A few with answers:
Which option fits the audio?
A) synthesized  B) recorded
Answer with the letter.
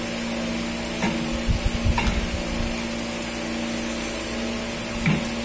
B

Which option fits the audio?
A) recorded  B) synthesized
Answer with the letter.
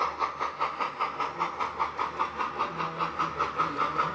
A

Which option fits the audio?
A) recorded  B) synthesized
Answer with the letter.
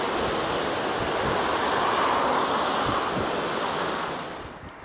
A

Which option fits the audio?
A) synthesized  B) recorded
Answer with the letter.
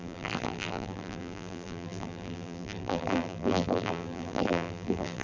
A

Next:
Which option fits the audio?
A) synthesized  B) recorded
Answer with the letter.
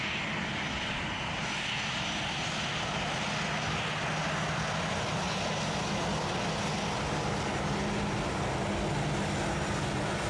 B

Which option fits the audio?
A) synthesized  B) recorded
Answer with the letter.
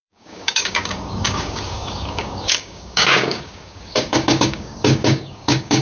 A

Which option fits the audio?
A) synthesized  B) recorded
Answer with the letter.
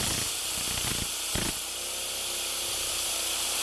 B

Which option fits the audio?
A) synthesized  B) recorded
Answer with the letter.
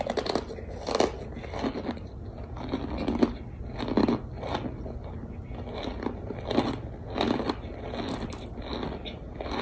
B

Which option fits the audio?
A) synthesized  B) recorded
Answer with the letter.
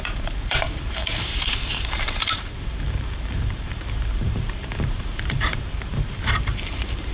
A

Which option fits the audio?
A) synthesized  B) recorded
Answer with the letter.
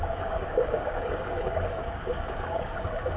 A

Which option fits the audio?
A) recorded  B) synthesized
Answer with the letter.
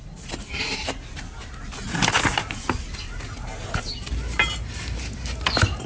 A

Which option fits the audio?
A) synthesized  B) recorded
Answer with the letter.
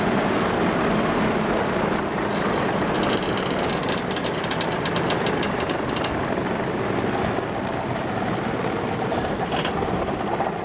B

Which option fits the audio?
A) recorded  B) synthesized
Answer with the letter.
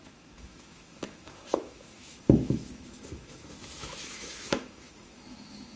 B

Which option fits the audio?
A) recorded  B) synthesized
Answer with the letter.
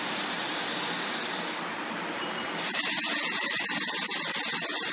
A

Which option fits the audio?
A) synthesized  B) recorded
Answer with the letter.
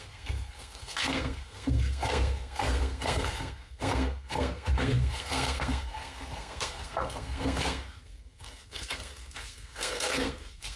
A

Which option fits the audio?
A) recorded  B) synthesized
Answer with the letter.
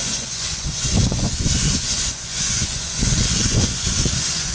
B